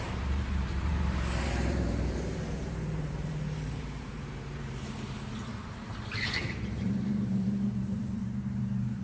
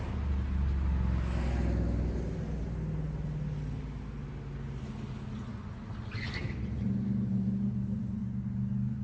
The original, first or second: second